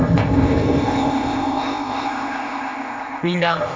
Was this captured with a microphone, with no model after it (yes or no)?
no